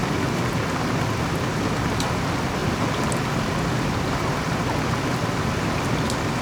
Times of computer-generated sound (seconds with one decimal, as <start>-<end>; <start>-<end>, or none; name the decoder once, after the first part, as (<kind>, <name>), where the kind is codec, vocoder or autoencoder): 0.0-0.5 (vocoder, BigVGAN v2); 2.6-3.2